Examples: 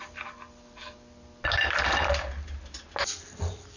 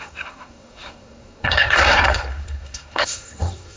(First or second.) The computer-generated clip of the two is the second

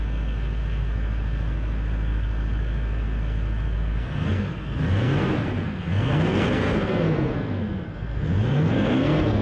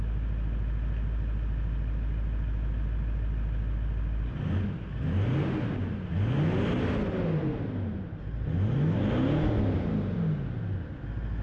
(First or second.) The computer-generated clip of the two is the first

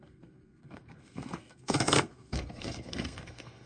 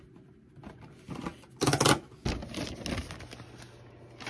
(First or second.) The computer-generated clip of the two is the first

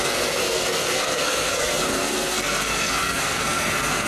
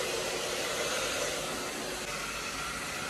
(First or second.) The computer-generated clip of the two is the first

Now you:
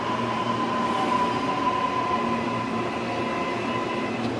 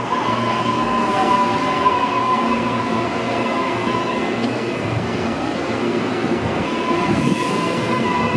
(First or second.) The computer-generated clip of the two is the second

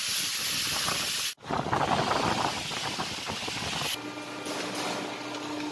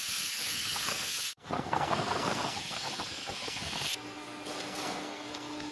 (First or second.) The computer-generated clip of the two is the second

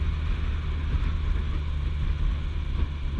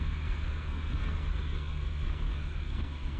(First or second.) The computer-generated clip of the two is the second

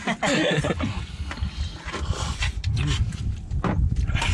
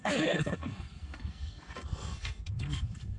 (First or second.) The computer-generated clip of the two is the second